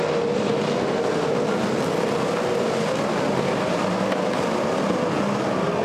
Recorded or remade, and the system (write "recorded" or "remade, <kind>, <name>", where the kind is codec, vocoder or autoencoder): recorded